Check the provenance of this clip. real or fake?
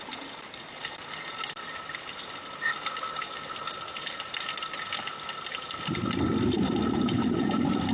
real